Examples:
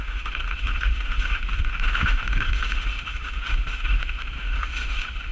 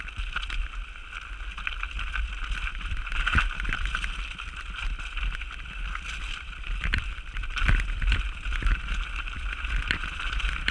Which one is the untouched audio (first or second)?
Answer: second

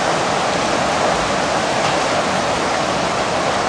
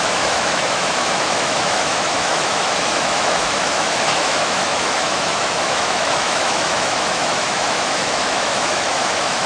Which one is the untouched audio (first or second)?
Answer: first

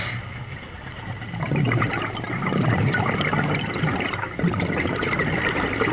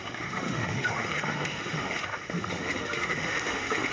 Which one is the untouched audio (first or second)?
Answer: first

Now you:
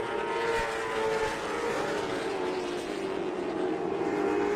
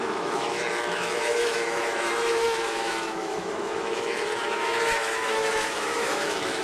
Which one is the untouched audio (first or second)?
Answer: first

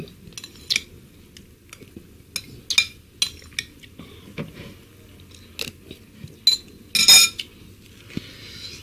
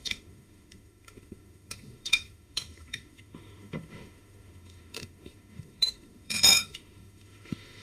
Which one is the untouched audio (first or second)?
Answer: first